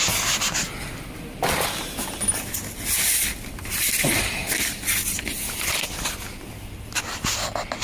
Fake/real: real